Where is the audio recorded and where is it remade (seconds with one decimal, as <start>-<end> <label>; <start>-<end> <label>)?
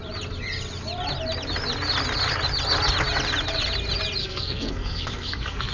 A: 0.0-4.2 recorded; 4.2-5.7 remade